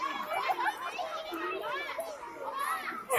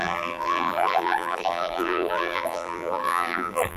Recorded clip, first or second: first